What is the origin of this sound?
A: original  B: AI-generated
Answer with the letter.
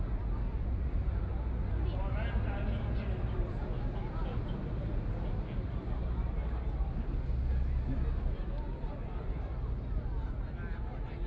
A